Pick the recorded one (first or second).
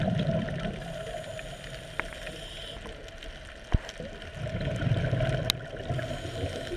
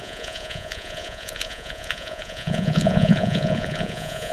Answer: first